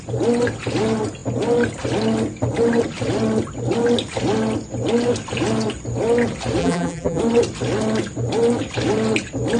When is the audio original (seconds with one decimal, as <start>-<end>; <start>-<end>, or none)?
0.0-6.6; 7.2-9.6